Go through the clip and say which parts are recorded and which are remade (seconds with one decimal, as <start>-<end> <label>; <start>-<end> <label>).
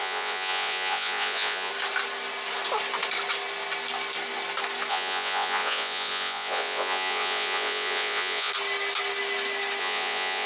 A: 0.0-1.7 remade; 1.7-4.9 recorded; 4.9-8.5 remade; 8.5-9.8 recorded; 9.8-10.5 remade